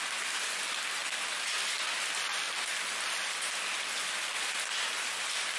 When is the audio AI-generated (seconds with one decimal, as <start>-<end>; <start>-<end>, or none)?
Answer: none